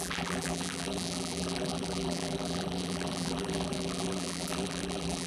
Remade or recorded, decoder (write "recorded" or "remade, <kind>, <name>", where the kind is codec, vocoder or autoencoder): remade, vocoder, BigVGAN v2